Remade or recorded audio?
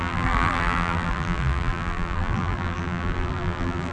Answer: remade